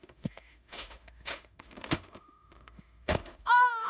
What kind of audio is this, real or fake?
fake